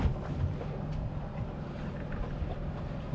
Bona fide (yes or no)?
yes